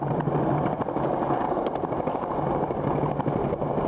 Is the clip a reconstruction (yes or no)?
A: no